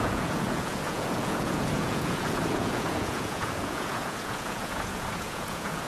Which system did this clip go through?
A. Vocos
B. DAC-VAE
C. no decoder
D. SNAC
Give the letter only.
A